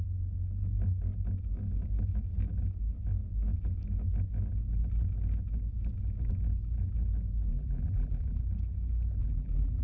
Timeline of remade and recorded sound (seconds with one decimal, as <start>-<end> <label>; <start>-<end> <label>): 0.0-7.5 recorded; 7.5-8.4 remade; 8.4-9.2 recorded; 9.2-9.8 remade

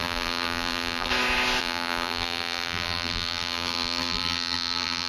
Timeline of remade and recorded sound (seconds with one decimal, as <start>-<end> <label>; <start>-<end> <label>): 0.0-1.1 remade; 1.1-1.6 recorded; 1.6-5.1 remade

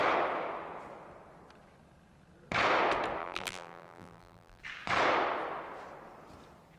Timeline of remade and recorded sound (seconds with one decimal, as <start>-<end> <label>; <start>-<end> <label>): 0.0-3.2 recorded; 3.2-4.6 remade; 4.6-6.8 recorded

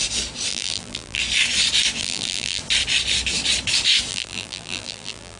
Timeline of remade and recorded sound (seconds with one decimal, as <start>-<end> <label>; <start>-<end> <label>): 0.0-0.5 recorded; 0.5-1.2 remade; 1.2-2.0 recorded; 2.0-2.6 remade; 2.6-4.1 recorded; 4.1-5.4 remade

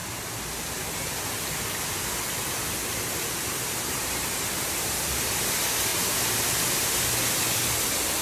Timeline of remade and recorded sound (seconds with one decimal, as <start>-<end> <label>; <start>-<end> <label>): 0.0-3.6 recorded; 3.6-5.4 remade; 5.4-8.2 recorded

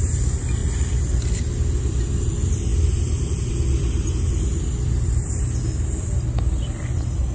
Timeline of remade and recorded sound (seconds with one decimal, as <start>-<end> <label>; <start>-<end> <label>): 0.0-7.3 remade